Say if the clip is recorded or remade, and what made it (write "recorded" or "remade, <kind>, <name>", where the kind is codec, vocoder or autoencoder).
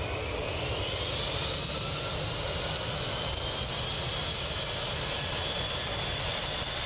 recorded